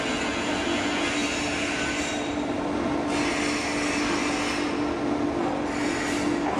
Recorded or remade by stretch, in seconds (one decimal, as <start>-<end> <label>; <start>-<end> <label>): 0.0-1.2 recorded; 1.2-1.9 remade; 1.9-6.6 recorded